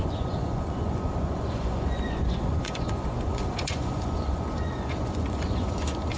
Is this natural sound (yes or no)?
no